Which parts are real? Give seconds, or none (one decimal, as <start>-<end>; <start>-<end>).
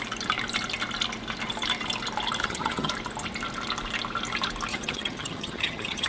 0.0-2.4; 2.9-4.7